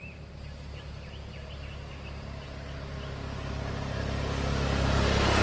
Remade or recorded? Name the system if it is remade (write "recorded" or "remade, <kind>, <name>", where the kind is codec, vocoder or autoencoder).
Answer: recorded